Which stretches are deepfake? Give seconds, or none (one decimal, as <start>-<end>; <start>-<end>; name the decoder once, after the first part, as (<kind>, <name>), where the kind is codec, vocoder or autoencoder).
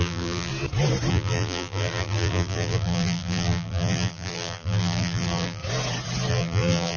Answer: 0.0-0.5 (vocoder, BigVGAN v2); 1.1-5.6; 6.3-7.0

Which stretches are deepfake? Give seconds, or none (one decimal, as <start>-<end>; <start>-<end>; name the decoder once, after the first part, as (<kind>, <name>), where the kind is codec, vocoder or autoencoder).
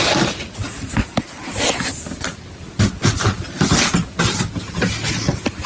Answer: none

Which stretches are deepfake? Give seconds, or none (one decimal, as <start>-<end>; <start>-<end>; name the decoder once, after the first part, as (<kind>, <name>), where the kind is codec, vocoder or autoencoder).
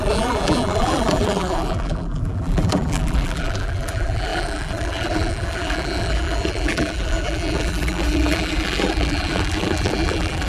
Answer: 0.0-10.5 (vocoder, BigVGAN v2)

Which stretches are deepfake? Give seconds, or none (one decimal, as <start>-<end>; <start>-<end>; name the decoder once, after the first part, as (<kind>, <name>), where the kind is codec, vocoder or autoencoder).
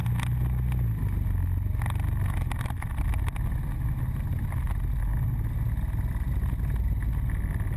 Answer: none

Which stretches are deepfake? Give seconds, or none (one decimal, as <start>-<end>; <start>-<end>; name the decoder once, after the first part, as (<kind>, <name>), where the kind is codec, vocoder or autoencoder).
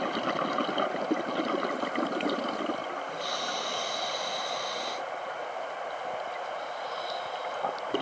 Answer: none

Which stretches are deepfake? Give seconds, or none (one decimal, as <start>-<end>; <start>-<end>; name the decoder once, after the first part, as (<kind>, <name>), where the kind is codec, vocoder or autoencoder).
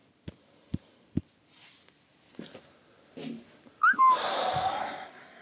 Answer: 0.0-2.8 (vocoder, BigVGAN v2); 3.2-4.6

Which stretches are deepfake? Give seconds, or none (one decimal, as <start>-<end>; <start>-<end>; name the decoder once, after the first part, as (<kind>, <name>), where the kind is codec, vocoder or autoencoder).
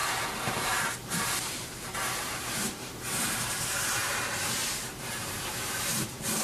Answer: 0.6-6.4 (vocoder, BigVGAN v2)